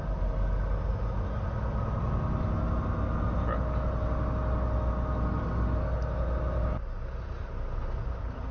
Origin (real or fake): real